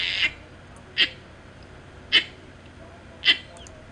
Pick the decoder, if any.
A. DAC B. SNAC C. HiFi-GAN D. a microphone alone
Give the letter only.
D